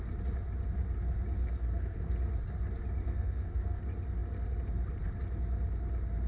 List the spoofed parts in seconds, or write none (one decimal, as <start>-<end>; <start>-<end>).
1.4-2.1; 3.0-3.8

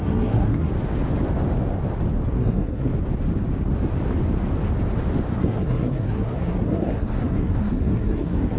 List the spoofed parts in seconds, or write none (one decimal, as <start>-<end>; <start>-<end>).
0.0-0.7; 2.3-2.9; 5.3-8.6

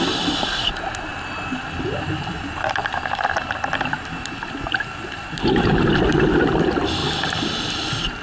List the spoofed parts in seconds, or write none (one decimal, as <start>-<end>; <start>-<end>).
0.0-7.0; 7.7-8.2

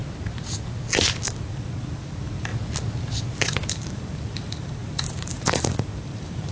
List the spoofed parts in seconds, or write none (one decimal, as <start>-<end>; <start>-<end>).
1.5-2.5; 3.7-6.5

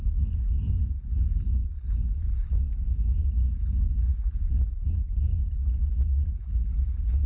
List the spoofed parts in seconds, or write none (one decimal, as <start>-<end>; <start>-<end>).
none

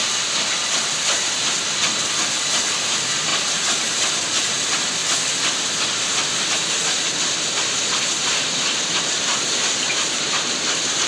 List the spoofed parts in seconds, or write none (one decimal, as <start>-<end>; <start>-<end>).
0.0-5.0; 8.5-11.1